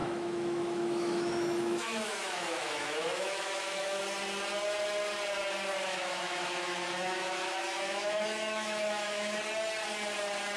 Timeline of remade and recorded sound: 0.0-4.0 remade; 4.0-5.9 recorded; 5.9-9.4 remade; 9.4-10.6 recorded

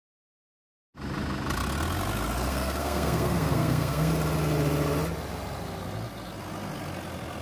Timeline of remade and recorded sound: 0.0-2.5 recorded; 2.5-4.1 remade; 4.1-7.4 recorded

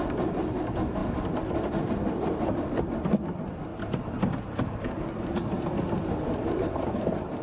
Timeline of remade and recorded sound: 0.0-7.4 recorded

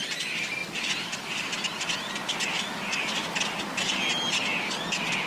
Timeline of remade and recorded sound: 0.0-5.3 recorded

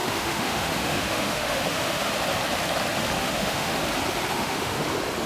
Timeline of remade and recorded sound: 0.0-2.1 remade; 2.1-3.2 recorded; 3.2-3.8 remade; 3.8-4.3 recorded; 4.3-4.8 remade; 4.8-5.3 recorded

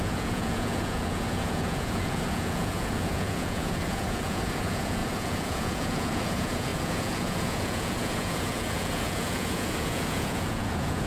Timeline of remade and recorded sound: 0.0-11.1 remade

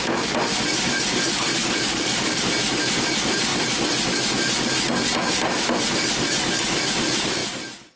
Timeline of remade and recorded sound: 0.0-1.6 recorded; 1.6-2.4 remade; 2.4-8.0 recorded

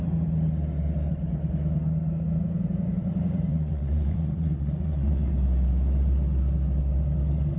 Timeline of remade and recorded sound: 0.0-3.5 recorded; 3.5-5.3 remade; 5.3-7.6 recorded